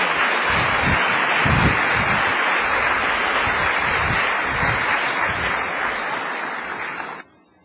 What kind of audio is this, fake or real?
real